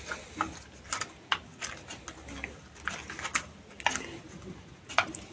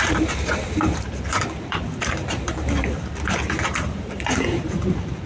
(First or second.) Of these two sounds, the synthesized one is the second